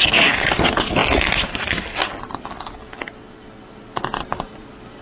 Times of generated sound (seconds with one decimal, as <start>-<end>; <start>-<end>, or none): none